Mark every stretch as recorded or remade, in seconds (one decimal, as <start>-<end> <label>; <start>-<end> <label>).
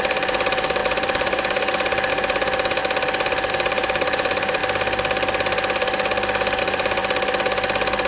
0.0-2.8 remade; 2.8-3.5 recorded; 3.5-4.6 remade; 4.6-6.6 recorded; 6.6-7.0 remade; 7.0-8.1 recorded